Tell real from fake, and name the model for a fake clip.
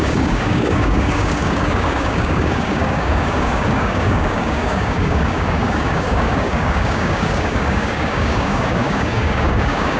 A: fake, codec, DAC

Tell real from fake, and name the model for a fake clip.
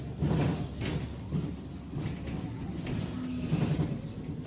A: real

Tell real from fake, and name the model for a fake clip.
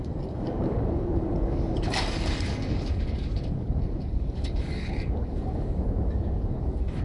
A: fake, codec, DAC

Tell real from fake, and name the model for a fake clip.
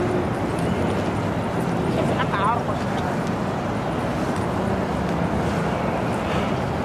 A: real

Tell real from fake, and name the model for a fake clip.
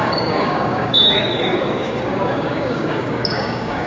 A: fake, codec, DAC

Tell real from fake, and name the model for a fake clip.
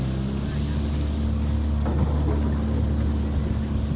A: real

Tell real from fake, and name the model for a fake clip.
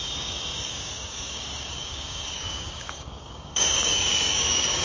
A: fake, codec, DAC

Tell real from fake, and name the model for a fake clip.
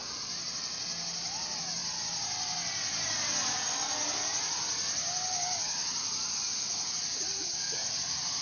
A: real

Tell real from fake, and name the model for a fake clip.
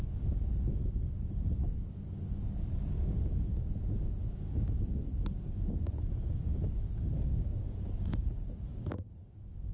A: fake, codec, DAC